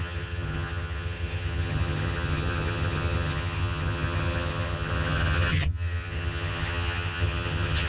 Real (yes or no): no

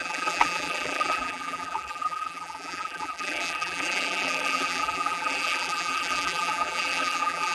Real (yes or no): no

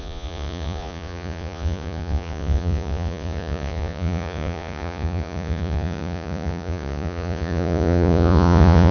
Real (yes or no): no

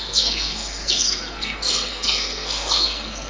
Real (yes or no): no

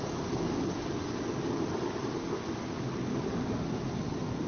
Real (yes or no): yes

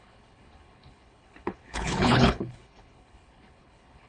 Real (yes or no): no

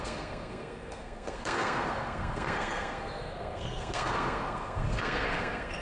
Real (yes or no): no